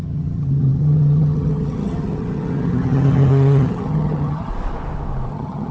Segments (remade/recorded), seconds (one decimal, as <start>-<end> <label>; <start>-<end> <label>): 0.0-4.5 remade; 4.5-5.3 recorded; 5.3-5.7 remade